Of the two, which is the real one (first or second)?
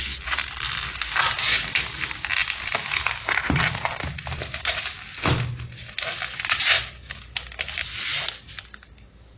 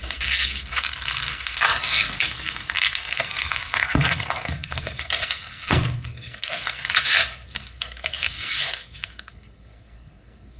first